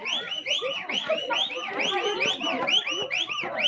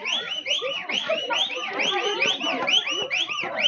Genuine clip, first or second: first